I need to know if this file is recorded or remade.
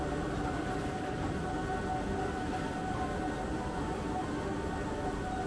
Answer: recorded